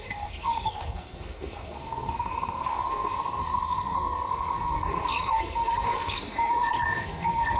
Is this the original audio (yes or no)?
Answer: no